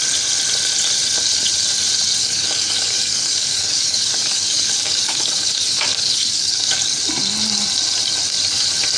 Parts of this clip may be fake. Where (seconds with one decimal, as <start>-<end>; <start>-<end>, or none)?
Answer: 2.2-7.0